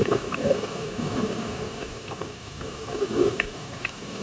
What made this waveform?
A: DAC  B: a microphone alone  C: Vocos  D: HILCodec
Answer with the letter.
A